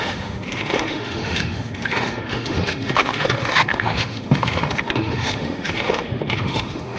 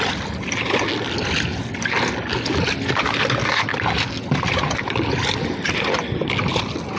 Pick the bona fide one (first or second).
second